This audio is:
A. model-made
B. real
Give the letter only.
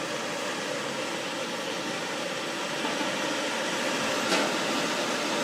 B